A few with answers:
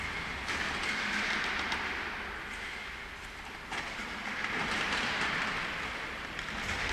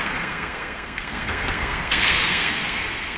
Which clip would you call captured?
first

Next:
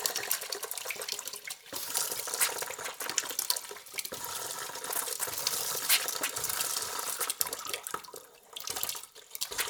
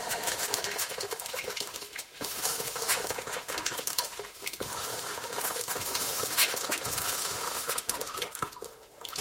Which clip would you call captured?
first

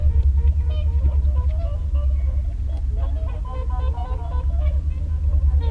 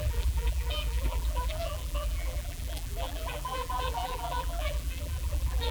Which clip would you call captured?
first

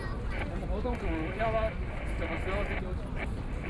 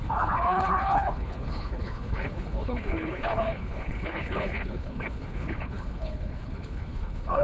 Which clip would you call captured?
first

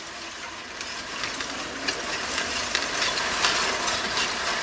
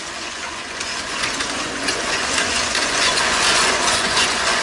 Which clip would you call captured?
first